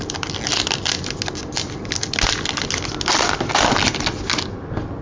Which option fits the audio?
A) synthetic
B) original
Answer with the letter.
B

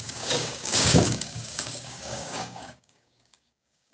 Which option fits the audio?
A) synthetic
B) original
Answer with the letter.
A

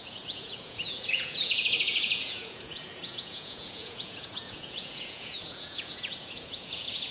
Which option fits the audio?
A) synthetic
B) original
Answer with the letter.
A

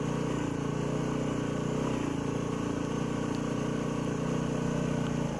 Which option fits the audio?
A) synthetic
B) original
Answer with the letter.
B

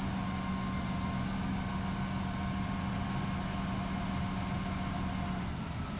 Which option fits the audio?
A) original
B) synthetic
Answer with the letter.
A